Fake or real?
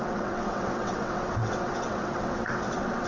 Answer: fake